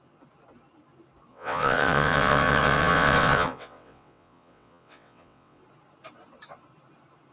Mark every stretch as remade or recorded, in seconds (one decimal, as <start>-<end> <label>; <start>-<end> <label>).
0.0-1.3 recorded; 1.3-5.6 remade; 5.6-7.3 recorded